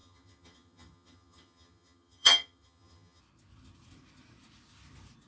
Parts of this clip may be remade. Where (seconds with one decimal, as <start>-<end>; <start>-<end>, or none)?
0.0-3.2